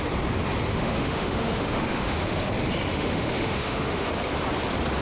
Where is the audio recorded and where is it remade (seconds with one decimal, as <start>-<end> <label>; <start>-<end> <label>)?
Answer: 0.0-0.7 recorded; 0.7-2.5 remade; 2.5-2.9 recorded; 2.9-4.1 remade; 4.1-5.0 recorded